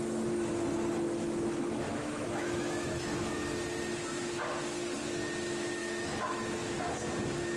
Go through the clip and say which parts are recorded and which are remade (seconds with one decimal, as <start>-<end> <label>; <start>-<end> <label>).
0.0-1.9 recorded; 1.9-3.4 remade; 3.4-5.8 recorded; 5.8-6.8 remade; 6.8-7.6 recorded